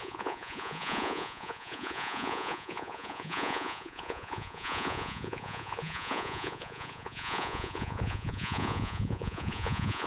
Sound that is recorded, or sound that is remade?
remade